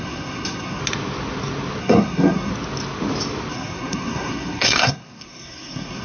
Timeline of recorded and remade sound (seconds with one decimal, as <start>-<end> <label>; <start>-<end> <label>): 0.0-0.8 remade; 0.8-1.8 recorded; 1.8-2.5 remade; 2.5-3.5 recorded; 3.5-6.0 remade